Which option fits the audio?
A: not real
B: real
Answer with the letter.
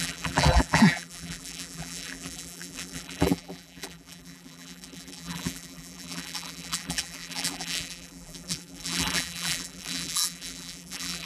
A